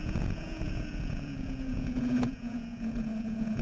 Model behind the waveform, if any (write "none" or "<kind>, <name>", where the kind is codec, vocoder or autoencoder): vocoder, Vocos